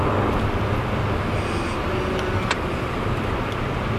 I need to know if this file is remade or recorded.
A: recorded